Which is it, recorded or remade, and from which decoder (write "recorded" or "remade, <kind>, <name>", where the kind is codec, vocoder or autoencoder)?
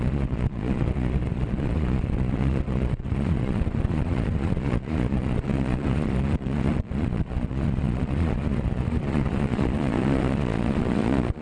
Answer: remade, vocoder, Vocos